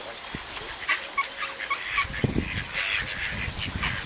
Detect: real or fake real